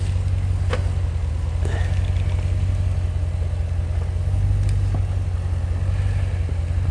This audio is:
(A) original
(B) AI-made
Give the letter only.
A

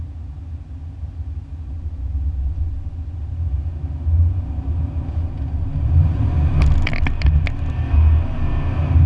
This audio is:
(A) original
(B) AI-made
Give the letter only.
A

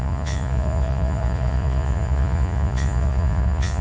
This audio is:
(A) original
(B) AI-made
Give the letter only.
B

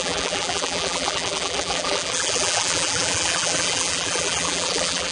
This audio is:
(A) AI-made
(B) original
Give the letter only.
A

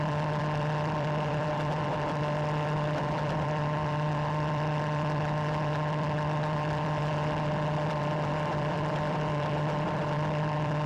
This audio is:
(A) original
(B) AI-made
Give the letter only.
B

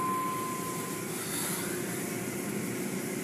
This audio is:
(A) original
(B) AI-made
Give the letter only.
A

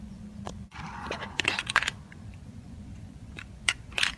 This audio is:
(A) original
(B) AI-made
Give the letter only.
B